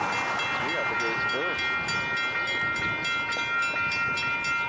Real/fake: real